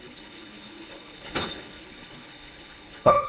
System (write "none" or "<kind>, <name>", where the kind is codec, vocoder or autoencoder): codec, HILCodec